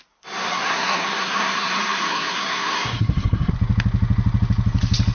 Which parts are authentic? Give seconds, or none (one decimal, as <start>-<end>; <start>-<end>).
0.0-0.4; 3.5-5.1